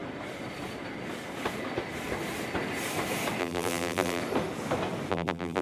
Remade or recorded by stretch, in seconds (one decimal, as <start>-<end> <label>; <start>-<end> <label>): 0.0-3.4 recorded; 3.4-4.2 remade; 4.2-5.1 recorded; 5.1-5.6 remade

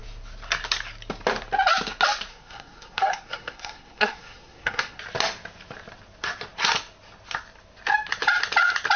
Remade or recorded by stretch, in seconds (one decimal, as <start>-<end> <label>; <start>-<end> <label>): 0.0-2.3 recorded; 2.3-5.0 remade; 5.0-9.0 recorded

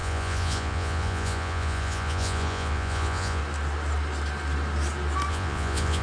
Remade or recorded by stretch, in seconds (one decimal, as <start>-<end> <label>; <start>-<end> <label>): 0.0-3.4 remade; 3.4-5.3 recorded; 5.3-6.0 remade

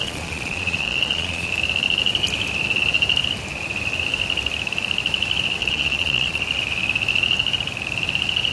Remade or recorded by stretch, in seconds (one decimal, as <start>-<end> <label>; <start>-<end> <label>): 0.0-1.5 remade; 1.5-5.6 recorded; 5.6-6.4 remade; 6.4-8.5 recorded

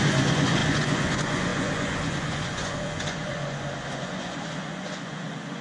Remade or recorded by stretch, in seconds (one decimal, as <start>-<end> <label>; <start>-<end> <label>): 0.0-5.6 remade